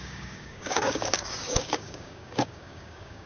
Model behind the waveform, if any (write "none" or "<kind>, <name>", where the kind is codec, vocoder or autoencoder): codec, DAC